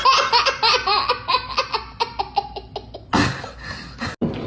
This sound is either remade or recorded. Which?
recorded